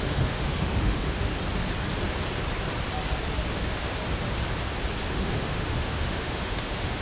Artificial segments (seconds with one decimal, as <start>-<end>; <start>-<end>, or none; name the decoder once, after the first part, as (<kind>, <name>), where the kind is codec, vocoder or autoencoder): 0.0-1.3 (autoencoder, DAC-VAE); 3.5-3.9; 5.1-7.0